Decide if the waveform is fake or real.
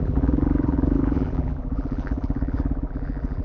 fake